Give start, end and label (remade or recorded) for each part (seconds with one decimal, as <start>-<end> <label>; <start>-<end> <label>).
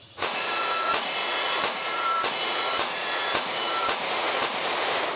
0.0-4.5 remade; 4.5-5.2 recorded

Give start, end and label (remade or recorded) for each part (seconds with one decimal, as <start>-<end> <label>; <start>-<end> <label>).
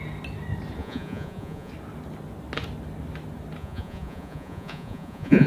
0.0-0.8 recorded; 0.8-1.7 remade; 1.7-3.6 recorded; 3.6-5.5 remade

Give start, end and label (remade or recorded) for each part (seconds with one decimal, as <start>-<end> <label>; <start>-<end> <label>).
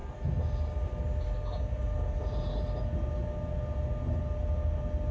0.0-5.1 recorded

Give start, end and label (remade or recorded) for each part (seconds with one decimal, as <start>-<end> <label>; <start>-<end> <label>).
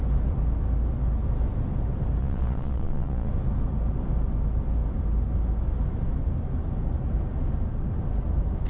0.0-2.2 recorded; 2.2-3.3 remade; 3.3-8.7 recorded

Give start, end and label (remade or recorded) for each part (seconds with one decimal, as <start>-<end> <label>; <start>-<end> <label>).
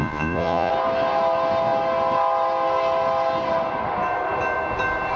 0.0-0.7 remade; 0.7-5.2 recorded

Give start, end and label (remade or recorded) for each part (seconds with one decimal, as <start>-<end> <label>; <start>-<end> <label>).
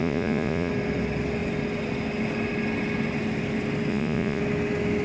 0.0-0.7 remade; 0.7-3.9 recorded; 3.9-4.4 remade; 4.4-5.0 recorded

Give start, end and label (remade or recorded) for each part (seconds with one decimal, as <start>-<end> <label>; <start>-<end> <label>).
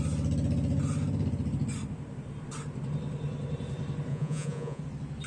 0.0-4.1 recorded; 4.1-4.8 remade; 4.8-5.3 recorded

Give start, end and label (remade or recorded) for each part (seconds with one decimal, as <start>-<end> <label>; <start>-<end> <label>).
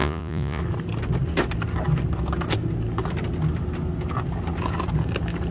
0.0-0.6 remade; 0.6-5.5 recorded